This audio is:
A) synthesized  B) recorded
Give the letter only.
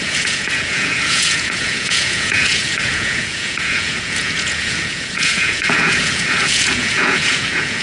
A